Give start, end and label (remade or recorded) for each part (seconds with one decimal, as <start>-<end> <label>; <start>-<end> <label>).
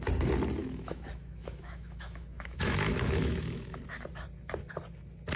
0.0-0.6 recorded; 0.6-3.8 remade; 3.8-5.4 recorded